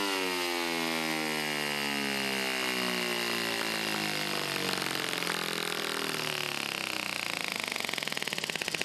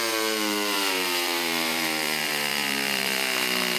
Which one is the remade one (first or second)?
second